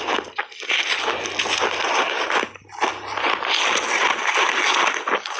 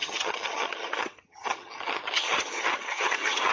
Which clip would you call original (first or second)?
first